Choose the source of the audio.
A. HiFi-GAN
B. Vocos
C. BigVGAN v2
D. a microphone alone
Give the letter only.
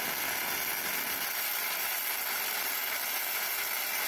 C